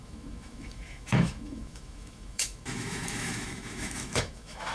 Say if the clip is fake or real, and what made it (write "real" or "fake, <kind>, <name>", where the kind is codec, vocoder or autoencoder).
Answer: fake, autoencoder, DAC-VAE